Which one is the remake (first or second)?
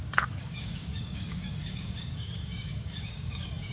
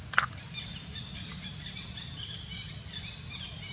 first